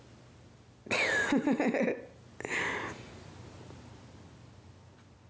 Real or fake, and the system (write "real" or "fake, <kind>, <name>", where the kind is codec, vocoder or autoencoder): real